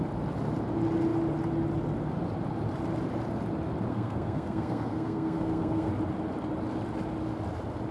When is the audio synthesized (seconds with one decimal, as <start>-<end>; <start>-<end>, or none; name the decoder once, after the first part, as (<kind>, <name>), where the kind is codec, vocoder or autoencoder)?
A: 3.9-5.9 (codec, SNAC)